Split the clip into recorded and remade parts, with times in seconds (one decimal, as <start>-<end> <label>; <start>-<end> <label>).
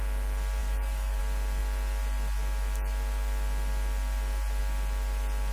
0.0-0.6 recorded; 0.6-1.2 remade; 1.2-5.5 recorded